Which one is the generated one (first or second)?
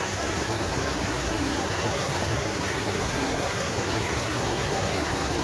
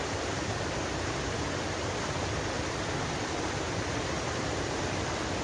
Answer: first